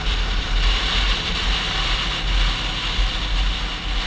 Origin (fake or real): real